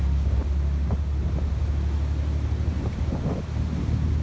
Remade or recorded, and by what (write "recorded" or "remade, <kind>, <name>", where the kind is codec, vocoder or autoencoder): recorded